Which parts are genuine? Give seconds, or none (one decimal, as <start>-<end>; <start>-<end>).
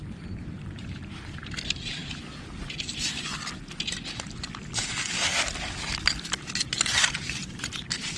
2.0-6.3